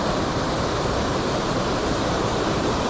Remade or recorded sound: remade